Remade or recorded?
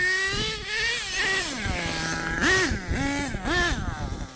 recorded